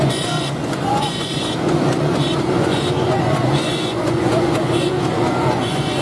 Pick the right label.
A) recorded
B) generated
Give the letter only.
B